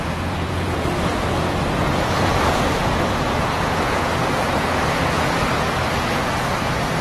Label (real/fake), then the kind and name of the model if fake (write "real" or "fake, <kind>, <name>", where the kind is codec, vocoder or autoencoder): fake, vocoder, Vocos